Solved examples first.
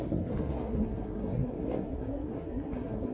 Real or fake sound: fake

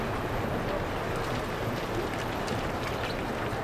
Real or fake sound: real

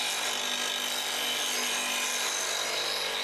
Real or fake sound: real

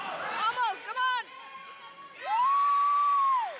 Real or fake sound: real